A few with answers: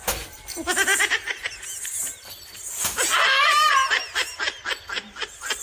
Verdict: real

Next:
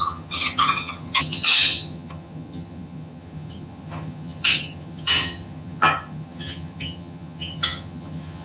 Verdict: fake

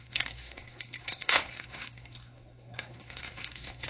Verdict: fake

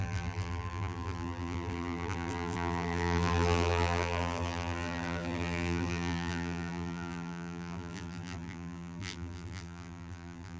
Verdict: fake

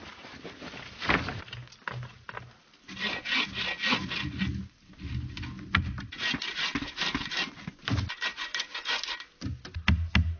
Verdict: real